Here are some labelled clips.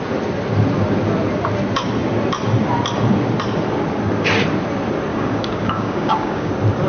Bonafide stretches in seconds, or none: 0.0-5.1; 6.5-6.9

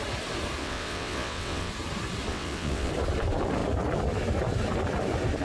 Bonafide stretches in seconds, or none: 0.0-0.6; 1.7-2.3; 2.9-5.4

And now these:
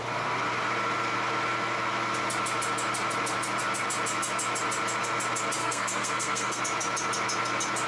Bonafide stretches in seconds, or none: 0.0-5.6; 6.6-7.9